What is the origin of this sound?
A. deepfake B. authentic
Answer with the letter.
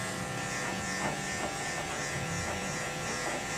A